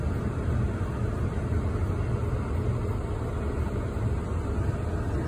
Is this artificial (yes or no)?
no